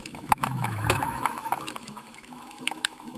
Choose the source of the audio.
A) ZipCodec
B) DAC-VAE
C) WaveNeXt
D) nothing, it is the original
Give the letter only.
B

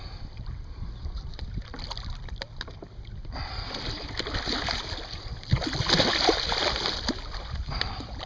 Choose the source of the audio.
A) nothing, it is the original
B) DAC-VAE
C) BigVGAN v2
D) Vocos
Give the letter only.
A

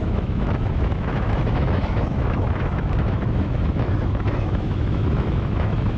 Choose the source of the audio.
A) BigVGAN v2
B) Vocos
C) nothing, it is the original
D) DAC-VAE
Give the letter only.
D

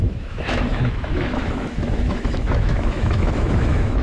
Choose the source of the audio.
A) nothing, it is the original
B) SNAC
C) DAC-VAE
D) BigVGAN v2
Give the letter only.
C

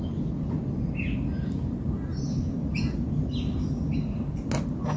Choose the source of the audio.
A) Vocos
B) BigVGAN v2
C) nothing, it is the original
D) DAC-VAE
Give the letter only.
C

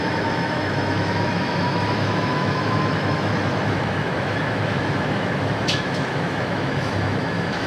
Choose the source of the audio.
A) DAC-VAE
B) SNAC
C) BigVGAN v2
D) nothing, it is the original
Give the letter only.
A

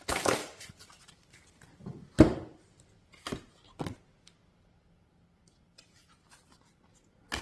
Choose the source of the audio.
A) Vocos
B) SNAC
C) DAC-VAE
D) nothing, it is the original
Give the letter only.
D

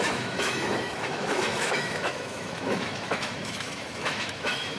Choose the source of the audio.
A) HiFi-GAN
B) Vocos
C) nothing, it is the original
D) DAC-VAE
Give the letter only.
D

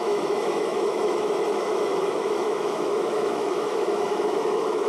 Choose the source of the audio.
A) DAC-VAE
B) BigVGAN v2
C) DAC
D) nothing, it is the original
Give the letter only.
A